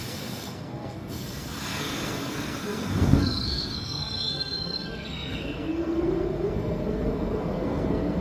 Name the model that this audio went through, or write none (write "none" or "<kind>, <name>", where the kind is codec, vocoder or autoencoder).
codec, SNAC